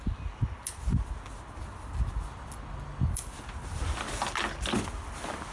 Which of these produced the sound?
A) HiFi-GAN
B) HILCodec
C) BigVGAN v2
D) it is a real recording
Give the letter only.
D